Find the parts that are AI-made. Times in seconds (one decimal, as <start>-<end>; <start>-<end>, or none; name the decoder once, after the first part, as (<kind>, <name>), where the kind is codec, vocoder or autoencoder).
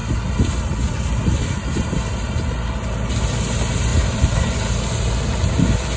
none